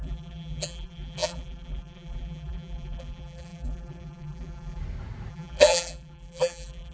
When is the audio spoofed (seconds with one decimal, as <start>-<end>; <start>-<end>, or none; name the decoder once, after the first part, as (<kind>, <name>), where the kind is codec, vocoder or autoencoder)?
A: 0.0-4.8 (vocoder, BigVGAN v2); 5.3-6.9